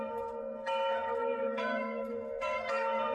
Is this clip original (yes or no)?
no